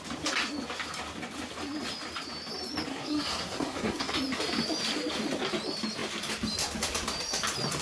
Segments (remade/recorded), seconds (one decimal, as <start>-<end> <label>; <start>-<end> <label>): 0.0-2.9 recorded; 2.9-4.1 remade; 4.1-7.8 recorded